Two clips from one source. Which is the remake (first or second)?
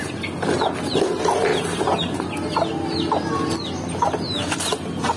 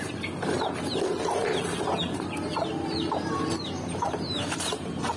second